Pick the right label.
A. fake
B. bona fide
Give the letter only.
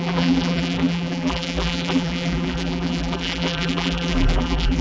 A